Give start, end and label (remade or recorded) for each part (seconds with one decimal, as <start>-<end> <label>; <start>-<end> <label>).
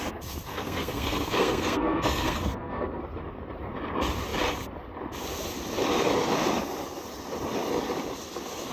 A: 0.0-0.5 recorded; 0.5-3.0 remade; 3.0-8.7 recorded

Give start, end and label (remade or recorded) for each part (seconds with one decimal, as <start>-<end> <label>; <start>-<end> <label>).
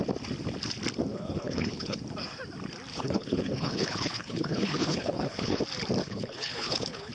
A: 0.0-1.1 recorded; 1.1-2.0 remade; 2.0-2.9 recorded; 2.9-5.6 remade; 5.6-6.0 recorded; 6.0-7.1 remade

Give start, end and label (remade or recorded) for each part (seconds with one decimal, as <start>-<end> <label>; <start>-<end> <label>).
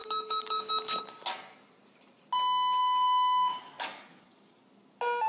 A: 0.0-0.7 remade; 0.7-2.8 recorded; 2.8-4.6 remade; 4.6-5.3 recorded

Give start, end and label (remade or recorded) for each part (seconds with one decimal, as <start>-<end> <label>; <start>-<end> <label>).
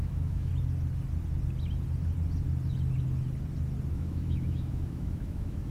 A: 0.0-0.5 remade; 0.5-3.9 recorded; 3.9-5.7 remade